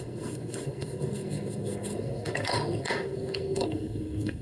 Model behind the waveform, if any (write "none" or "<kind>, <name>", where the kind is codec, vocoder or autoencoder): codec, SNAC